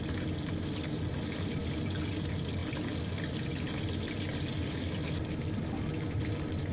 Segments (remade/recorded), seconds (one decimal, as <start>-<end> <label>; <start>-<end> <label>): 0.0-6.7 recorded